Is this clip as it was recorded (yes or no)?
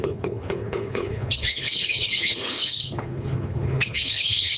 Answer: no